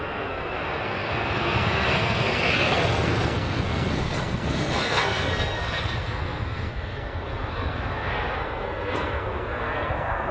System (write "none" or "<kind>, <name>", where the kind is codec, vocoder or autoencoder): codec, SNAC